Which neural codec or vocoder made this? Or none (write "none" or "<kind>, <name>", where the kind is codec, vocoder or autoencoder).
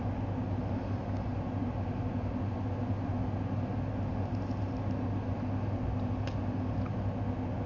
none